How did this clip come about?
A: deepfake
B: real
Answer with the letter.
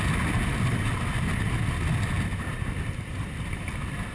B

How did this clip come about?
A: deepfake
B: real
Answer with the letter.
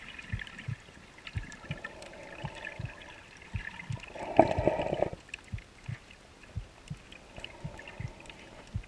B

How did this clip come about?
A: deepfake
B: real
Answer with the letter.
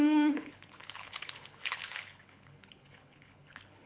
A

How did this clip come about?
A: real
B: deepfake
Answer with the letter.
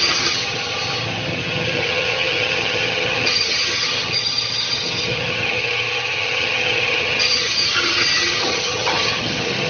B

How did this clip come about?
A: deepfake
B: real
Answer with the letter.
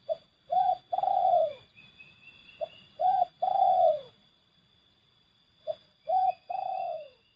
A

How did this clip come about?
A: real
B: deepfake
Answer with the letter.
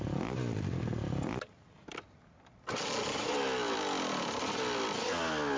A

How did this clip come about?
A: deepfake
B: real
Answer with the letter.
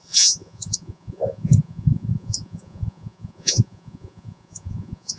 A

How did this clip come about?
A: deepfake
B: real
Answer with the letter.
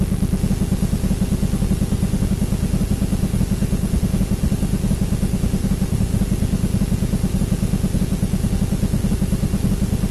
B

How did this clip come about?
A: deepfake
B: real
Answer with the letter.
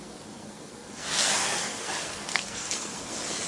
A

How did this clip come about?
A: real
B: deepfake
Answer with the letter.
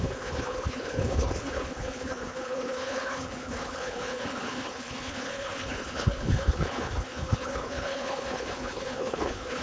B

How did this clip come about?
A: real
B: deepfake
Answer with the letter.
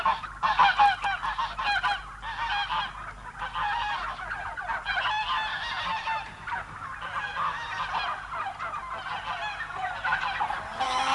A